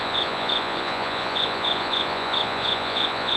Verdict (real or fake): fake